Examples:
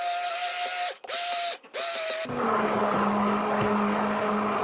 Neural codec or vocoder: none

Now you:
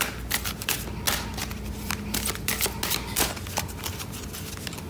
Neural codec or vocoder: none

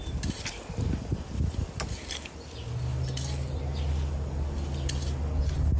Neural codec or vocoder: none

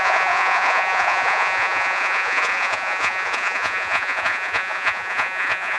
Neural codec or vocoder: vocoder, Vocos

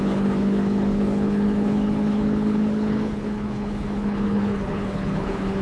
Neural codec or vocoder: codec, HILCodec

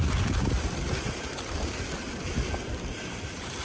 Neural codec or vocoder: none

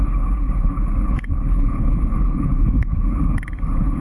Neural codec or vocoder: codec, HILCodec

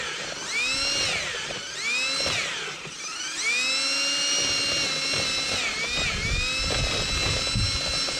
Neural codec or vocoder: none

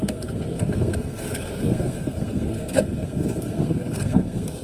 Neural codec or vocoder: codec, SNAC